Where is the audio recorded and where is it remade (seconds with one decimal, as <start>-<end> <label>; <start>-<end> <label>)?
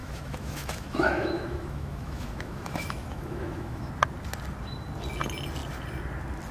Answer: 0.0-3.9 remade; 3.9-6.5 recorded